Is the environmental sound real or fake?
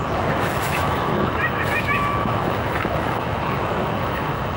fake